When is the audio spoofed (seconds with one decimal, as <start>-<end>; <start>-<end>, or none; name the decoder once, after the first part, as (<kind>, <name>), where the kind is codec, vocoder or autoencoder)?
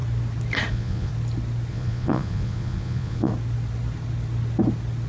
0.7-1.1 (vocoder, Vocos); 1.7-3.3